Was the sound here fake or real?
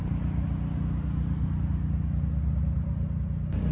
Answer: real